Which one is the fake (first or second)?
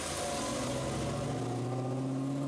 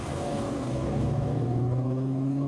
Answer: second